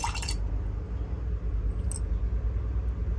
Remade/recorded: recorded